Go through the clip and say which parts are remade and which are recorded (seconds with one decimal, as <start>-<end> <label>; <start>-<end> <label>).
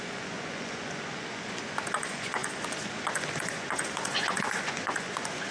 0.0-5.5 remade